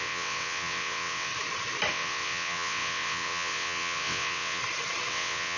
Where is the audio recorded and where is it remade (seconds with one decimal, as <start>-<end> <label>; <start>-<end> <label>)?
0.0-1.3 remade; 1.3-1.9 recorded; 1.9-4.6 remade; 4.6-5.1 recorded; 5.1-5.6 remade